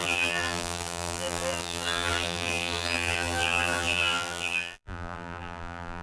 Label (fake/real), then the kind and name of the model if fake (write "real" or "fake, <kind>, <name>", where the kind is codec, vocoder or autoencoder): fake, vocoder, BigVGAN v2